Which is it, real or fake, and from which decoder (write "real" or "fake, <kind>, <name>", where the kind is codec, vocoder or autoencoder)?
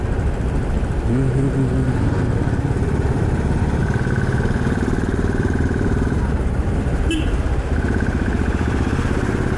real